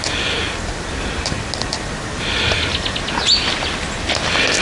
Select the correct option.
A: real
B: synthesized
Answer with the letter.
A